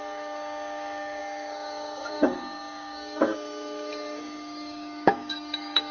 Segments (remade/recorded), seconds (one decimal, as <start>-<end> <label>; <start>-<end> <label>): 0.0-5.9 remade